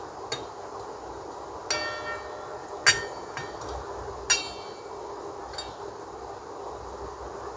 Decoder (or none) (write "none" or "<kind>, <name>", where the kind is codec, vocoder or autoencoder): none